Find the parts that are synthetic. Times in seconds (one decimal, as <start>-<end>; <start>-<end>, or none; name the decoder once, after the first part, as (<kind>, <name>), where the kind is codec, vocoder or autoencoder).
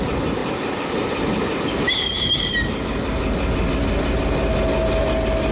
none